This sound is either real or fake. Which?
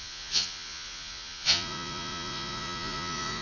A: fake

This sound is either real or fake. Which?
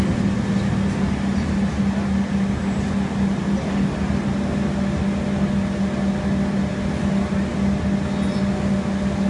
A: real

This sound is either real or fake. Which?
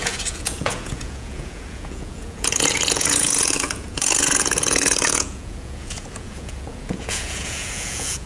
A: fake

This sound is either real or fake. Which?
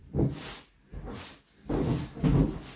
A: real